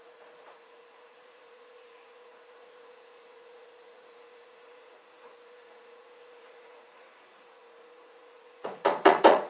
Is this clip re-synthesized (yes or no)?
yes